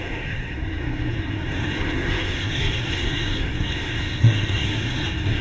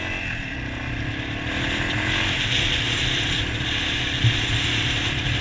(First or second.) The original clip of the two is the second